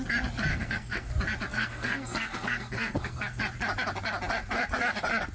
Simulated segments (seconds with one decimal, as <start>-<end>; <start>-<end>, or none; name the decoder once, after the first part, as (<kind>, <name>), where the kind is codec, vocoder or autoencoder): 0.5-1.1 (codec, SNAC); 1.5-3.4